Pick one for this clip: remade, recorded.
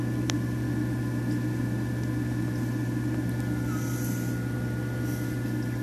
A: recorded